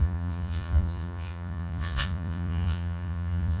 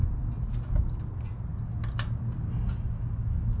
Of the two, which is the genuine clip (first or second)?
second